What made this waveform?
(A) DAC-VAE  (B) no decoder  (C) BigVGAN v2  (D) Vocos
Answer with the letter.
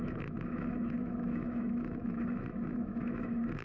A